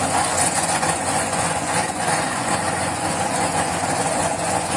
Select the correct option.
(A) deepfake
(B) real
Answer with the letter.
A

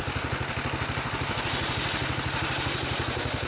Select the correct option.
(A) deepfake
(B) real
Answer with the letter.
B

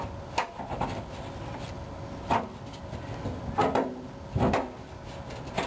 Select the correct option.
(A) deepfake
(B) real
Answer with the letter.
B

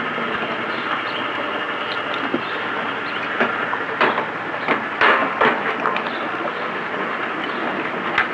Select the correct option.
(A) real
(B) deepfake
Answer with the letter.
A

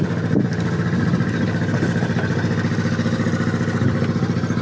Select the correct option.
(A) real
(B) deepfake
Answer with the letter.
A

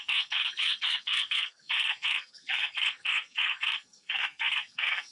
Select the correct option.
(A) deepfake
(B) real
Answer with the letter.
A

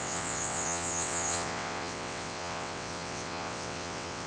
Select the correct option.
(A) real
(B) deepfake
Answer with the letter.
B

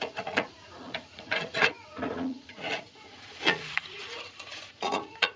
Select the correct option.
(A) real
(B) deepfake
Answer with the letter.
B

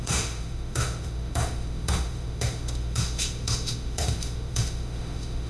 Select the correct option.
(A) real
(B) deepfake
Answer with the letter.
B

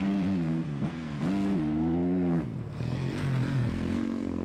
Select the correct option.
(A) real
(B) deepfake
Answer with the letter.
B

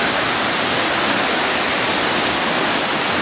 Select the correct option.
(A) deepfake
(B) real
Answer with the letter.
B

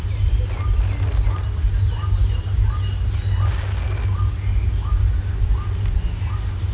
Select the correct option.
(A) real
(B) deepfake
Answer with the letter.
A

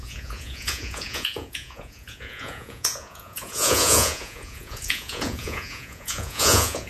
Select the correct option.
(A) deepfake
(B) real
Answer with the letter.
A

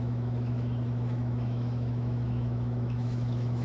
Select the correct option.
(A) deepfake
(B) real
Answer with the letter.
A